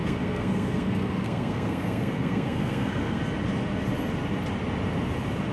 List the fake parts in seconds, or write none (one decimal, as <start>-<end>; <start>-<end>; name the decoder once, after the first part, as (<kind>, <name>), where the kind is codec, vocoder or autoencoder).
0.0-3.2 (codec, SNAC)